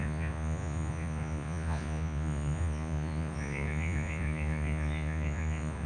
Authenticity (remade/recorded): remade